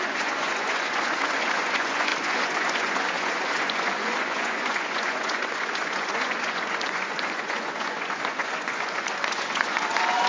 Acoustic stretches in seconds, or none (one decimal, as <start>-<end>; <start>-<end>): none